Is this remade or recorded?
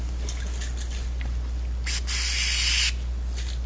recorded